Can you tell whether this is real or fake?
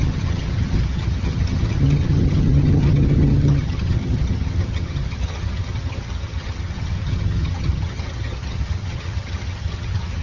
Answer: fake